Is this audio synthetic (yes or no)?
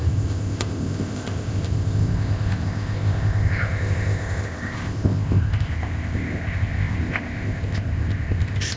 yes